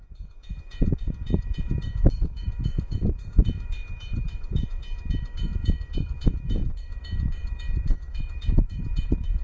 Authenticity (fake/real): fake